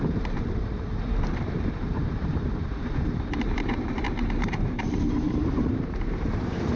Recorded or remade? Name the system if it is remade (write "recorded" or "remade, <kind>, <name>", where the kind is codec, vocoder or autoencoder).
remade, vocoder, BigVGAN v2